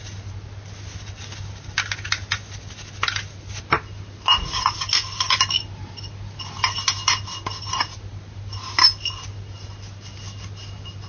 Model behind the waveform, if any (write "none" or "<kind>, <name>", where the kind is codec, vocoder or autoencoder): none